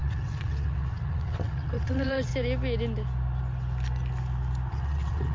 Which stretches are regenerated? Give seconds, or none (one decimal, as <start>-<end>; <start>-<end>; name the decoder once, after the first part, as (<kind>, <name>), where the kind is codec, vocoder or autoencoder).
0.0-2.3 (vocoder, WaveNeXt); 4.7-5.3